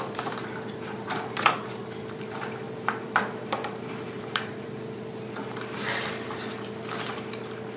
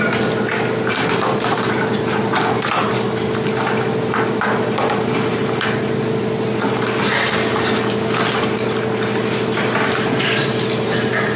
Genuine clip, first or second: second